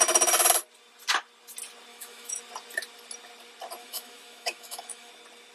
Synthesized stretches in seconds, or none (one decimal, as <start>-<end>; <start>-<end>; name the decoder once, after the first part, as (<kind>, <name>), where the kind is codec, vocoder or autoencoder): 1.9-2.4 (autoencoder, DAC-VAE); 3.8-5.1